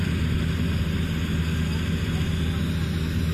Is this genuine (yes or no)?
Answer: yes